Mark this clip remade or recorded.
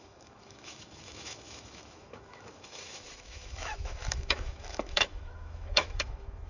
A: remade